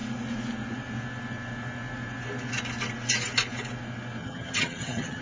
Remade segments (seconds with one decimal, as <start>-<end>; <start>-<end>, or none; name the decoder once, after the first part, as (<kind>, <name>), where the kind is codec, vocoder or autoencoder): 4.2-5.2 (vocoder, HiFi-GAN)